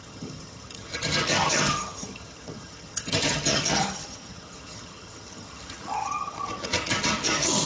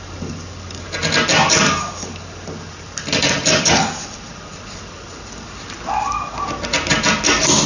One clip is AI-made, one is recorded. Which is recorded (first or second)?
second